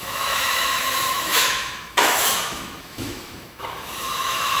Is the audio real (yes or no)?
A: no